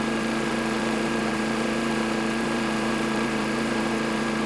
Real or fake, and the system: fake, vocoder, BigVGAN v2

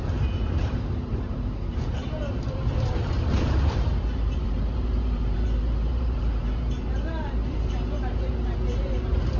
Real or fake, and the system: fake, vocoder, BigVGAN v2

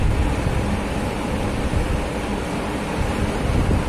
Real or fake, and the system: real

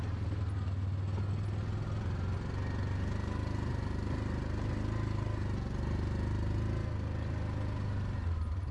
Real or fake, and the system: real